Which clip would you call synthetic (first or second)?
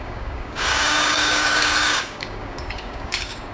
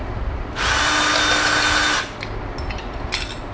first